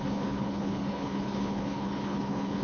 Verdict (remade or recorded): remade